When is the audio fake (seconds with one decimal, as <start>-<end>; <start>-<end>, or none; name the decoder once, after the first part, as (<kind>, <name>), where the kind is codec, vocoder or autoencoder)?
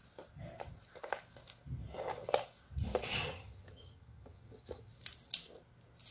3.1-4.9 (vocoder, HiFi-GAN)